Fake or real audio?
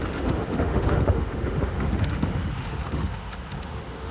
fake